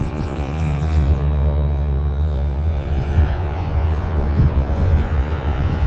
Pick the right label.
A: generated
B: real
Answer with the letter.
A